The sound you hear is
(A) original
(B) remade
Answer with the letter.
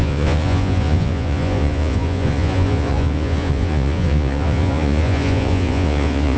B